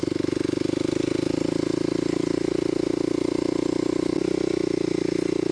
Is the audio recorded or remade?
recorded